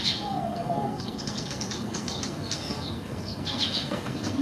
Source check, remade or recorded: remade